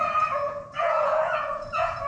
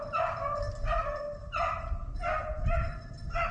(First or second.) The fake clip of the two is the first